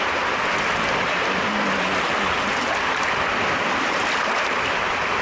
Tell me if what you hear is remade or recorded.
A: recorded